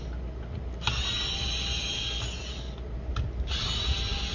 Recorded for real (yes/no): yes